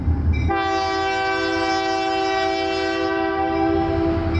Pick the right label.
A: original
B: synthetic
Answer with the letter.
A